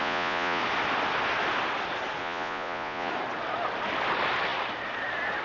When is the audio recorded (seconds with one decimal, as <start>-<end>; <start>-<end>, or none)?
0.6-2.2; 3.1-5.4

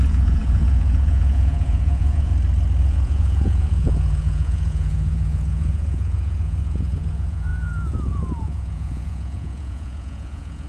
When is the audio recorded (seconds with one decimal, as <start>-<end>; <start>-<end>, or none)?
2.3-2.8